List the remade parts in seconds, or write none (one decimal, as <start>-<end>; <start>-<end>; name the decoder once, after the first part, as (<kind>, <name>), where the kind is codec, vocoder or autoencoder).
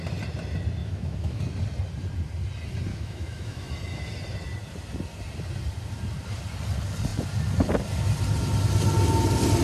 0.8-1.4 (autoencoder, DAC-VAE); 2.9-3.7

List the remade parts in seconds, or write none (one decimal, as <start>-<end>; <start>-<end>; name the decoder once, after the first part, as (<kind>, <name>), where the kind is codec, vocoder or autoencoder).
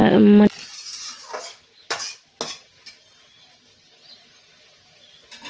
none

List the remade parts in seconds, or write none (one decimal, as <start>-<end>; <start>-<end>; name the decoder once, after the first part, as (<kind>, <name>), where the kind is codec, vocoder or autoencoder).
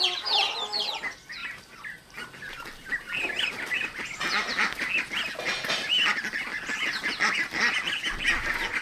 none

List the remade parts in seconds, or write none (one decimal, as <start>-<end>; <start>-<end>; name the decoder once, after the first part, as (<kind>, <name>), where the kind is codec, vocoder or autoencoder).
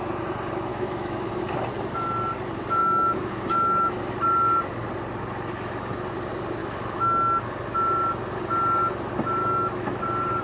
0.7-1.3 (autoencoder, DAC-VAE); 2.8-3.9; 6.6-7.4; 9.4-10.0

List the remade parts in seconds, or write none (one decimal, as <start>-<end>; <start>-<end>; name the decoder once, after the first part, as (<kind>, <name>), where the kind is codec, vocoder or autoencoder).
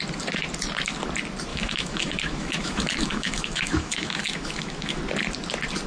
1.5-5.0 (autoencoder, DAC-VAE)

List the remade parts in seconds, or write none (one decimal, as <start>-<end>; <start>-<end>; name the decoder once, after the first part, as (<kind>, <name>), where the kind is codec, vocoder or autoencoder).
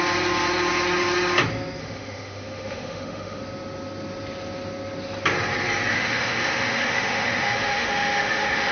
1.8-3.4 (autoencoder, DAC-VAE); 5.9-8.7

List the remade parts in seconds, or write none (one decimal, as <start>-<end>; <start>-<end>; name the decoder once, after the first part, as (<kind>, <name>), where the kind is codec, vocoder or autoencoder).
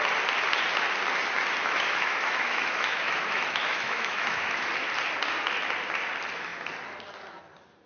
1.6-4.7 (autoencoder, DAC-VAE)